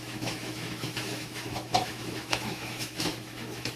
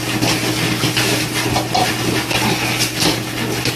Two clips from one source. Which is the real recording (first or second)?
second